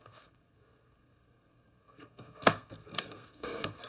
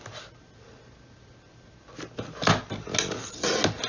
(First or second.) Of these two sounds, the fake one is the first